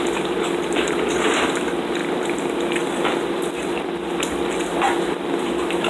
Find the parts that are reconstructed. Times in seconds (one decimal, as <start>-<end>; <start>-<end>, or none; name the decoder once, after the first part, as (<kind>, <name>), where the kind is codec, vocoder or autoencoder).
none